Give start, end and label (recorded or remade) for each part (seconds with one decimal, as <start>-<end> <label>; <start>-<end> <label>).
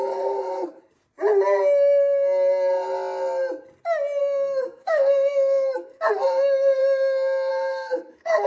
0.0-0.8 remade; 0.8-4.2 recorded; 4.2-6.8 remade; 6.8-7.5 recorded; 7.5-8.5 remade